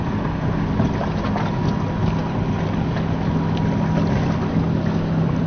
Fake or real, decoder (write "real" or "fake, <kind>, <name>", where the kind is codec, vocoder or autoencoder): real